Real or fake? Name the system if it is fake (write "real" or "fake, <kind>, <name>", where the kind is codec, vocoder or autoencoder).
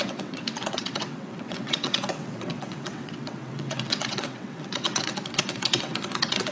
fake, vocoder, WaveNeXt